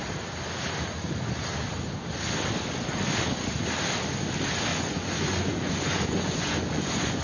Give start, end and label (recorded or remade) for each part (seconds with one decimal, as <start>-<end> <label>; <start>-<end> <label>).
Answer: 0.0-4.7 recorded; 4.7-7.2 remade